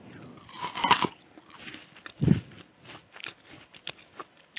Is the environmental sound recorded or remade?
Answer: recorded